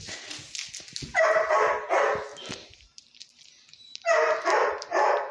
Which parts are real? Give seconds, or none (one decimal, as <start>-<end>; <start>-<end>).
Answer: 0.0-5.3

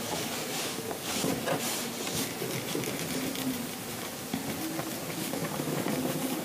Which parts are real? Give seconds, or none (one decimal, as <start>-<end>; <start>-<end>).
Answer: 1.3-5.0

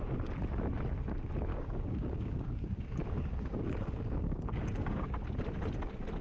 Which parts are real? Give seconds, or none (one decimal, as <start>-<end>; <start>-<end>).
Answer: 0.0-1.5; 5.2-6.2